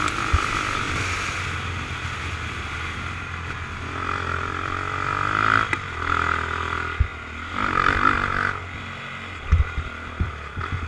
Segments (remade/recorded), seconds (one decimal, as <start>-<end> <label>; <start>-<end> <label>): 0.0-10.9 recorded